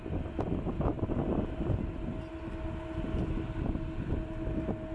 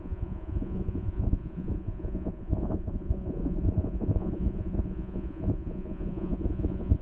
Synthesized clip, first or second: second